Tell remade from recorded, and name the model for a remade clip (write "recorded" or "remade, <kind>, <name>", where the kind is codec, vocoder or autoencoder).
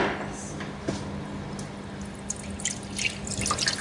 recorded